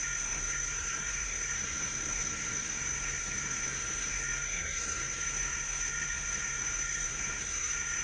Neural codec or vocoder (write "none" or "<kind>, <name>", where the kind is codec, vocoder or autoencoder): codec, SNAC